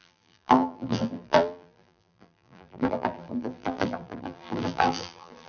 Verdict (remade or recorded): remade